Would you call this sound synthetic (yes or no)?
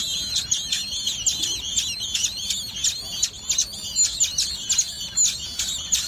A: no